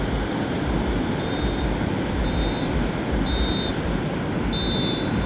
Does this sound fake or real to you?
real